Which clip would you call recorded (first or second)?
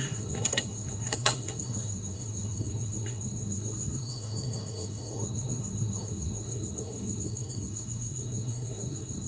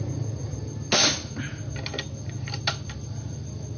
second